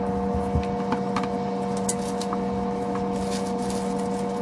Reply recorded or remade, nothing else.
recorded